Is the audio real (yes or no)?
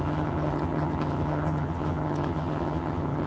no